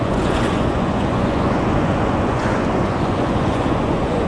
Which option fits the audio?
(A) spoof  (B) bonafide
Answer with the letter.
A